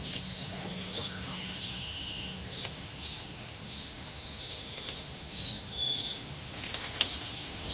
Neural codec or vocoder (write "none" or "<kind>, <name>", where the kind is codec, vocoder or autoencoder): autoencoder, DAC-VAE